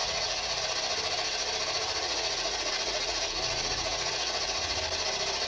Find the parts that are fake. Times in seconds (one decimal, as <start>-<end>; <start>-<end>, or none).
0.0-0.6; 2.0-4.8